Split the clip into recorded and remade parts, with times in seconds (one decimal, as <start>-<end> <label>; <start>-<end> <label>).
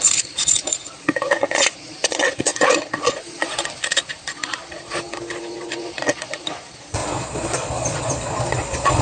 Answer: 0.0-9.0 remade